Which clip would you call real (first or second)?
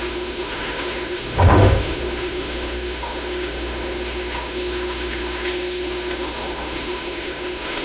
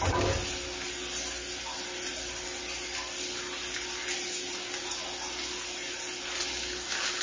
second